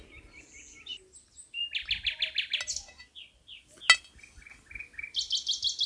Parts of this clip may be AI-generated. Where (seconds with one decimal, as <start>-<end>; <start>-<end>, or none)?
none